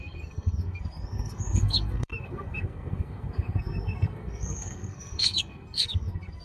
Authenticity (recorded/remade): remade